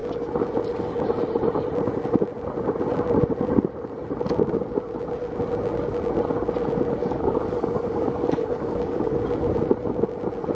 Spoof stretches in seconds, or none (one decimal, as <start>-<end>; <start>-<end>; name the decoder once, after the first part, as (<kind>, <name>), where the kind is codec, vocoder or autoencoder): 7.0-9.1 (codec, DAC)